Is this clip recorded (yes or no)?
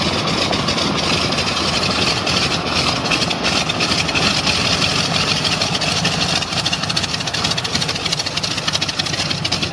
yes